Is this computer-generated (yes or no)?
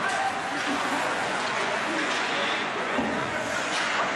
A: yes